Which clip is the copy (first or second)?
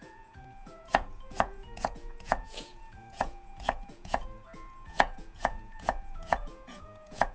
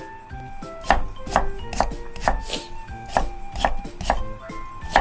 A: first